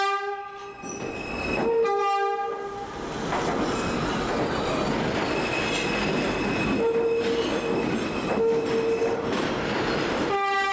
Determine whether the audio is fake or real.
real